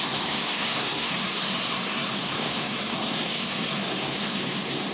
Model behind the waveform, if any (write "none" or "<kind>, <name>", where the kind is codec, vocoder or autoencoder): codec, SNAC